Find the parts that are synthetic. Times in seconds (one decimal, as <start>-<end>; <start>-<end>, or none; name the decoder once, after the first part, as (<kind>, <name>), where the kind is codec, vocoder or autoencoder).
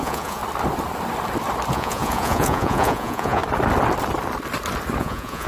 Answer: 0.0-0.4 (vocoder, Vocos); 1.7-3.4; 5.0-5.5